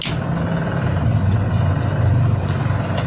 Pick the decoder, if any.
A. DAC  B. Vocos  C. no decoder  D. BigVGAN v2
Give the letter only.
C